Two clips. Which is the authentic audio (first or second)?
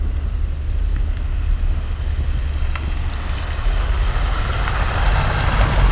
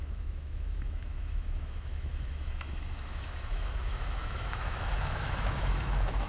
first